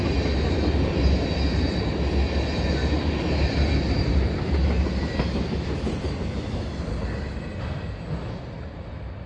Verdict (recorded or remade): recorded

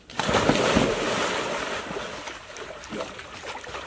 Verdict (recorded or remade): recorded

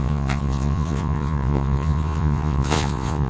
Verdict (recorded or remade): remade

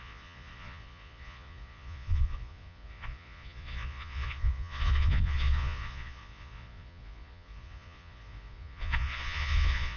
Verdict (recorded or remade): remade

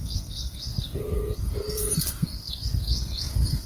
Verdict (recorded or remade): remade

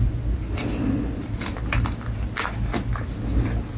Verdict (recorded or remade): recorded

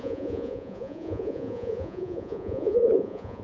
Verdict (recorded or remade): remade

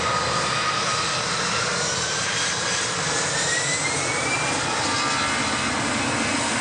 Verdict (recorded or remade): recorded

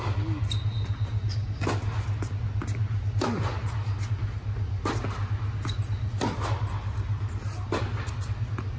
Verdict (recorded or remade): recorded